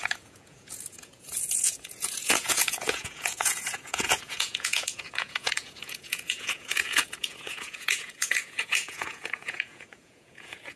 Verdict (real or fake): fake